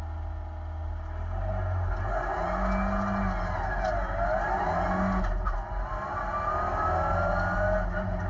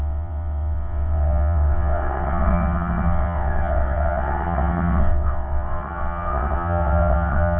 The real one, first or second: first